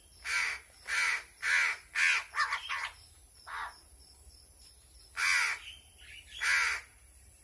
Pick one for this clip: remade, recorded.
recorded